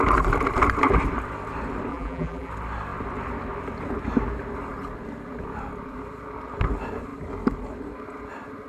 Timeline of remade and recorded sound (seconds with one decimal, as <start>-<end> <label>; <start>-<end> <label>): 0.0-1.9 recorded; 1.9-2.5 remade; 2.5-8.7 recorded